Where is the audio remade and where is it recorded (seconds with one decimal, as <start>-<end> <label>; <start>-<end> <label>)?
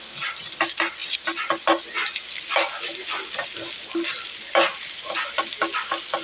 0.0-6.2 recorded